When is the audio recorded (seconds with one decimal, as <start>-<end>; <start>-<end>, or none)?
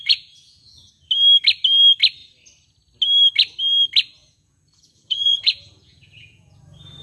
0.9-4.2; 6.6-7.0